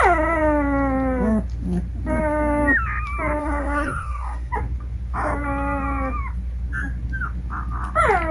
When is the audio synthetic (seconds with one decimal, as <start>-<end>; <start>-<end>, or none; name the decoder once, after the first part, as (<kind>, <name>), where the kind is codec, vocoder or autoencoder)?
3.4-4.5 (codec, SNAC)